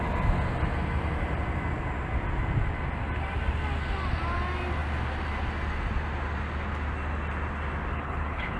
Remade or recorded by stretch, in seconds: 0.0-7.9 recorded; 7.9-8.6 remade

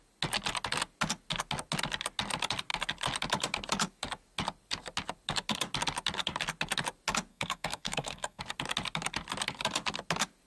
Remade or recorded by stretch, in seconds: 0.0-7.3 recorded; 7.3-8.4 remade; 8.4-10.5 recorded

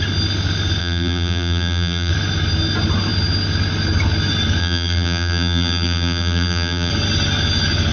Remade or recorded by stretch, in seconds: 0.0-0.8 recorded; 0.8-2.1 remade; 2.1-4.6 recorded; 4.6-6.9 remade; 6.9-7.9 recorded

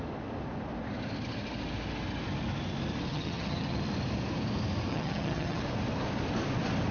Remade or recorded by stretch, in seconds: 0.0-3.1 recorded; 3.1-3.8 remade; 3.8-4.9 recorded; 4.9-5.6 remade; 5.6-6.9 recorded

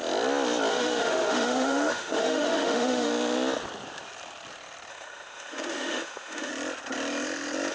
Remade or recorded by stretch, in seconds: 0.0-0.7 recorded; 0.7-3.1 remade; 3.1-4.9 recorded; 4.9-6.5 remade; 6.5-7.7 recorded